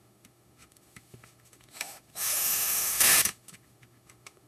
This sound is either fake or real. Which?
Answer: fake